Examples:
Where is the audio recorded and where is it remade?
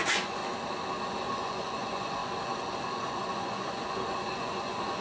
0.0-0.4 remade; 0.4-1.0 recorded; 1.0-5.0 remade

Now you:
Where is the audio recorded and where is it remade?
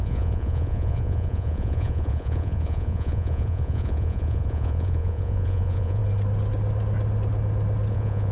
0.0-6.0 remade; 6.0-7.9 recorded; 7.9-8.3 remade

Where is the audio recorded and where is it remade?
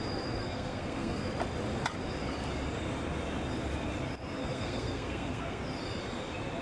0.0-0.4 recorded; 0.4-1.3 remade; 1.3-4.4 recorded; 4.4-5.6 remade; 5.6-6.6 recorded